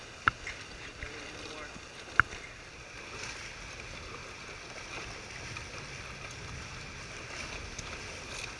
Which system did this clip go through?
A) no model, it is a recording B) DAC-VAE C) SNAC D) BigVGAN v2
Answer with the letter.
A